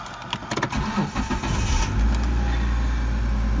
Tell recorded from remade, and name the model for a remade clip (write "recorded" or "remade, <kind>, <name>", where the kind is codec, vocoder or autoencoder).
recorded